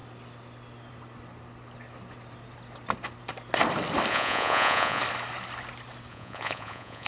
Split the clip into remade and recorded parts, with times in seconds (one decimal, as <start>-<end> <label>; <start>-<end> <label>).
0.0-4.1 recorded; 4.1-5.0 remade; 5.0-6.1 recorded; 6.1-7.1 remade